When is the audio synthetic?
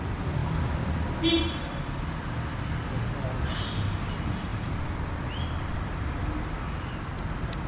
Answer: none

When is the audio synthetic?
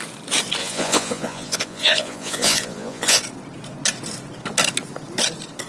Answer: 0.6-3.2 (vocoder, Vocos)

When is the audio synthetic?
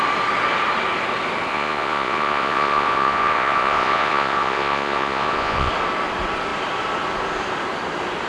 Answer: 1.5-5.7 (vocoder, Vocos)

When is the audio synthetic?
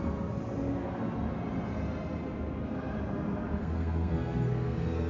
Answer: 3.6-5.1 (codec, SNAC)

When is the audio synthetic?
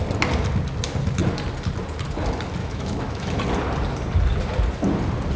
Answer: 2.6-3.4 (autoencoder, DAC-VAE)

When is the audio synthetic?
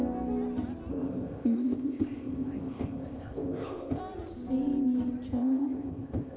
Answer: 0.9-4.0 (codec, ZipCodec); 5.3-6.4